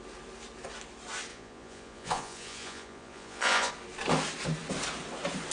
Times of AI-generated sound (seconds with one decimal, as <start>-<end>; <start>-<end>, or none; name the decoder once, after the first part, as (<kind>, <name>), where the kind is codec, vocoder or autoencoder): 1.3-3.7 (vocoder, Vocos)